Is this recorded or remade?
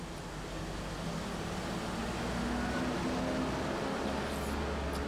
recorded